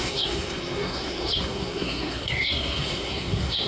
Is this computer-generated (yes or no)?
yes